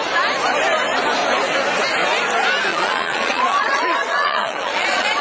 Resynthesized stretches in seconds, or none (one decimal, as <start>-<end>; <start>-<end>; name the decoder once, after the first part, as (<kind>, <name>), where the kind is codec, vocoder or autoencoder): 2.7-5.2 (vocoder, Vocos)